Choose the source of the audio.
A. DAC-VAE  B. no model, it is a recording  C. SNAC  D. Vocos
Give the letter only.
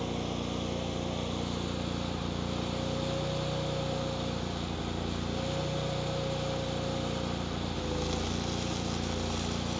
B